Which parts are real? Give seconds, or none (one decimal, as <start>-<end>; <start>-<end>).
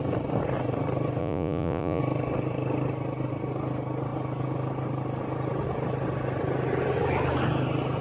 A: 0.0-1.2; 2.0-8.0